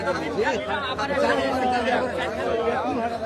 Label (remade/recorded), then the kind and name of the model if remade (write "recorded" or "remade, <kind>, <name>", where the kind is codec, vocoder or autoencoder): remade, vocoder, BigVGAN v2